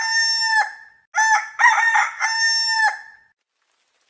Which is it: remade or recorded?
recorded